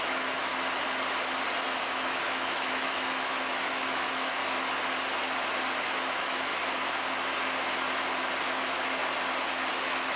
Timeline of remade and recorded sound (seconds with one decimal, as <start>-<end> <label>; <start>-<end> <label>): 0.0-0.5 remade; 0.5-1.8 recorded; 1.8-4.4 remade; 4.4-5.8 recorded; 5.8-6.5 remade; 6.5-9.7 recorded; 9.7-10.2 remade